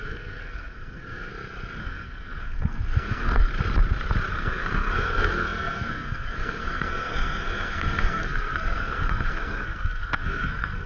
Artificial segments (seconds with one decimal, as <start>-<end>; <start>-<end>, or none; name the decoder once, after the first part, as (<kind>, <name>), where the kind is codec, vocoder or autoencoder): 0.0-1.3 (codec, SNAC); 1.8-3.5; 4.3-10.9